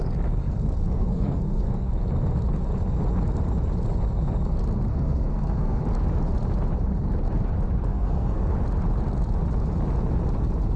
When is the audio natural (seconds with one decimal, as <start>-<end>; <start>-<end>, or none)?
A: 0.0-0.4; 1.9-4.9; 5.8-7.9; 8.5-10.8